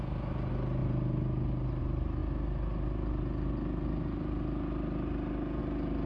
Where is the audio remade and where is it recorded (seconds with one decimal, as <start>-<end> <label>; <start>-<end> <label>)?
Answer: 0.0-6.1 recorded